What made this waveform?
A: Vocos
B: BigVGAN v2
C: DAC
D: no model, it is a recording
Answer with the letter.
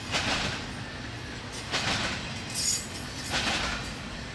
D